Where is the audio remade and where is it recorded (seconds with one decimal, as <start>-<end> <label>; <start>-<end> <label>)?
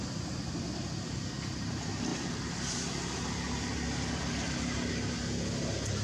0.0-6.0 recorded